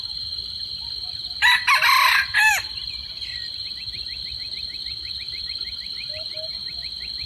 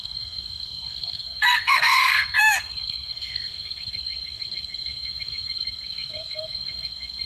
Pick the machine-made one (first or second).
second